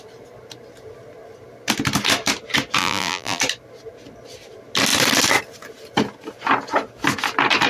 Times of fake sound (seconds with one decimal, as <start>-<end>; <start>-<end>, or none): 2.8-3.4